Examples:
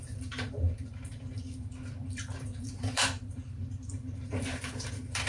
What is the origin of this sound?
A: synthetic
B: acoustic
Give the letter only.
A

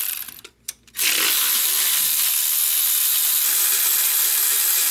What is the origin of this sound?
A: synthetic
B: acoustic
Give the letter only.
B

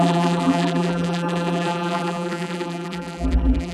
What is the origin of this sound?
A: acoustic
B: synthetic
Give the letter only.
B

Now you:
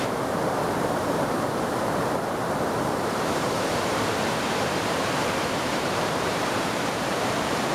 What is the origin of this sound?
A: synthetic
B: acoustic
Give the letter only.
A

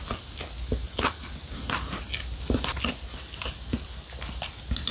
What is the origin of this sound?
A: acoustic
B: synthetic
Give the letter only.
A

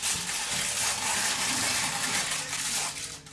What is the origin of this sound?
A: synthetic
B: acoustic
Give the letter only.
B